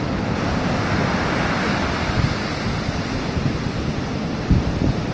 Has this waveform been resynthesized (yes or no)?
no